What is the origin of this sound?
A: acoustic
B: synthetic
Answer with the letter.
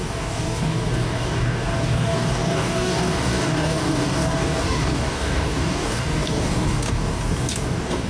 B